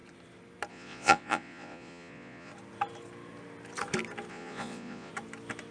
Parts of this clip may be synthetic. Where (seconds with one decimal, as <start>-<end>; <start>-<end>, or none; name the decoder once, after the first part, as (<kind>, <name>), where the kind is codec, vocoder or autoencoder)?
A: 0.7-2.5 (vocoder, Vocos); 4.3-5.1